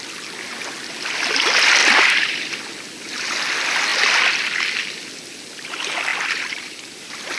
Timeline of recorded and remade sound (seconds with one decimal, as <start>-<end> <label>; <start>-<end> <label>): 0.0-1.8 recorded; 1.8-2.6 remade; 2.6-6.1 recorded; 6.1-7.4 remade

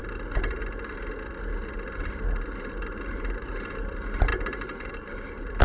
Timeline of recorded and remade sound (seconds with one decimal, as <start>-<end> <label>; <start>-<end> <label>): 0.0-0.6 remade; 0.6-2.3 recorded; 2.3-5.6 remade

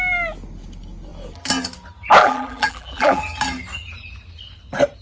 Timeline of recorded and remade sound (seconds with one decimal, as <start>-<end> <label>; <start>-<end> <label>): 0.0-2.2 recorded; 2.2-3.2 remade; 3.2-5.0 recorded

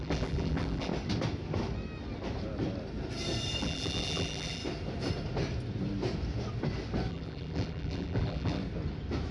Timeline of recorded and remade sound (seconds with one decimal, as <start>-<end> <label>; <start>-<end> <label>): 0.0-0.9 remade; 0.9-3.6 recorded; 3.6-4.6 remade; 4.6-7.1 recorded; 7.1-8.6 remade; 8.6-9.3 recorded